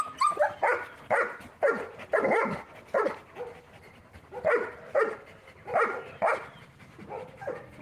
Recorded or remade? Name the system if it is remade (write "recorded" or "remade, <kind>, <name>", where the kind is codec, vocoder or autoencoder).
recorded